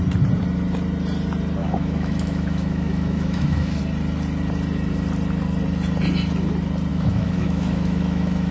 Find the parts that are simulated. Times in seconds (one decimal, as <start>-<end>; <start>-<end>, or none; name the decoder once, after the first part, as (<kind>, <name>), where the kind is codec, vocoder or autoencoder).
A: 1.6-3.8 (autoencoder, DAC-VAE); 6.9-8.5